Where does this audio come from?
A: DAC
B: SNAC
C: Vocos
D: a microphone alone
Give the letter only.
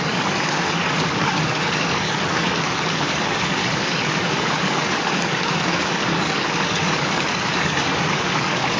A